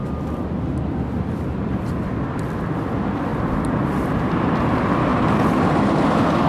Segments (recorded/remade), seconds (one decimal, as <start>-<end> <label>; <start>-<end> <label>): 0.0-3.3 recorded; 3.3-3.9 remade; 3.9-6.5 recorded